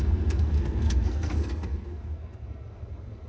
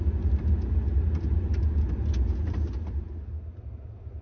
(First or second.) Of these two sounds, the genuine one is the second